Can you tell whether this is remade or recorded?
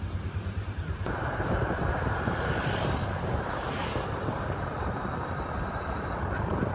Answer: remade